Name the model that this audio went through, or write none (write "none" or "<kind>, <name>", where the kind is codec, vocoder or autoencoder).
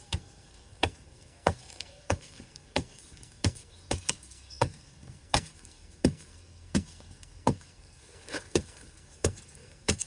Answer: codec, SNAC